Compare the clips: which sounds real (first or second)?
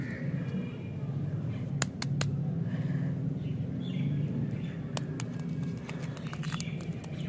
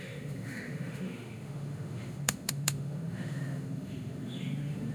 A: first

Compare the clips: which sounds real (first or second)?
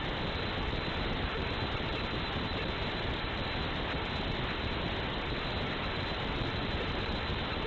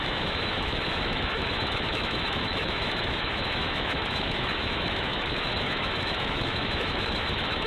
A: first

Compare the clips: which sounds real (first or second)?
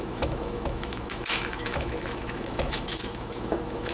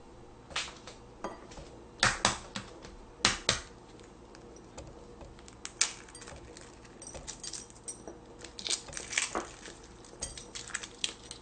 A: second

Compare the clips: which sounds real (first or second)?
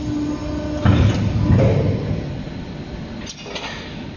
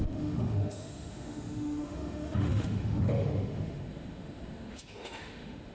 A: first